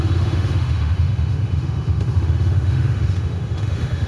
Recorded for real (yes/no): no